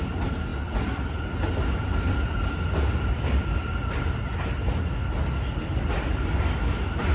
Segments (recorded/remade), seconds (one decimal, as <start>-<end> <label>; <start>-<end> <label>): 0.0-7.1 recorded